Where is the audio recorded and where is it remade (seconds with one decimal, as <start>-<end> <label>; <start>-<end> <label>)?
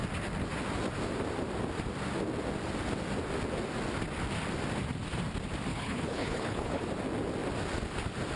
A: 0.0-5.7 recorded; 5.7-6.8 remade; 6.8-8.4 recorded